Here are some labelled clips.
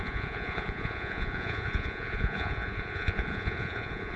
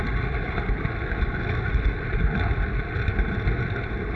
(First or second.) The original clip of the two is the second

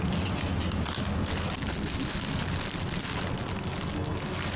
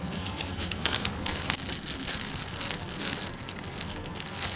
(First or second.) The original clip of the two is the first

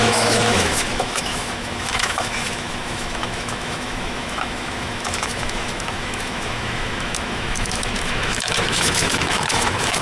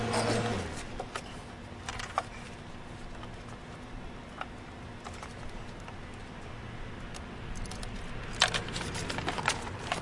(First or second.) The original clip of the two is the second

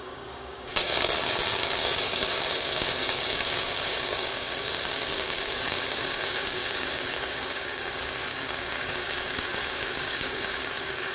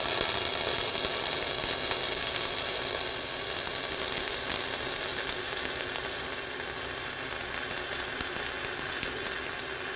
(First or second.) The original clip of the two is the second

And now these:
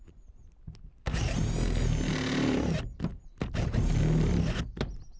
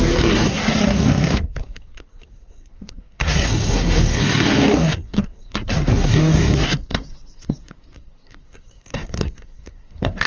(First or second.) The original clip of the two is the first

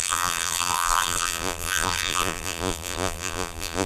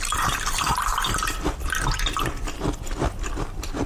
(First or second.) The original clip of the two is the second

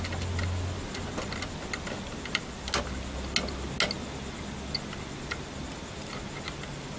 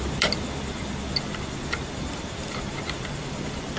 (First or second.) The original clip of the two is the first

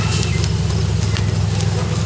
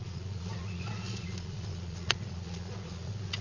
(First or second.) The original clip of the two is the first